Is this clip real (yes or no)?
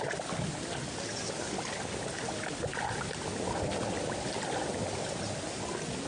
yes